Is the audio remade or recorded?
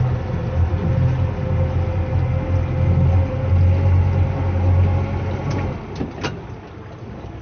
recorded